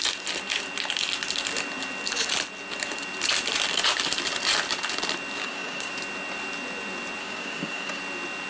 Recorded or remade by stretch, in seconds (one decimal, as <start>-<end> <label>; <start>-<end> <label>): 0.0-5.4 recorded; 5.4-5.9 remade; 5.9-7.2 recorded; 7.2-8.0 remade; 8.0-8.5 recorded